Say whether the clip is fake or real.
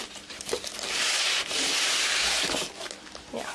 real